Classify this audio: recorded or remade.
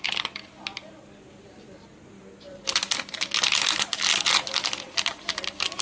recorded